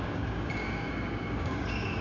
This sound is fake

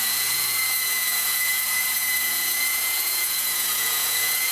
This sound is fake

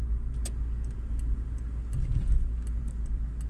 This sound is real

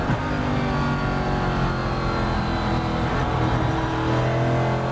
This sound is real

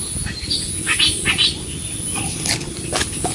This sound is real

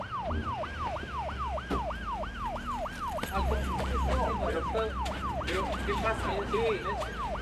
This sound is real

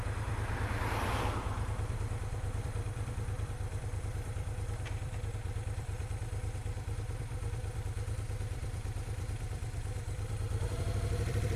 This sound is fake